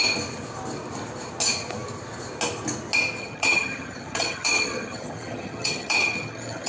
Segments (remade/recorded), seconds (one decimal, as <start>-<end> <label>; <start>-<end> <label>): 0.0-3.2 recorded; 3.2-6.7 remade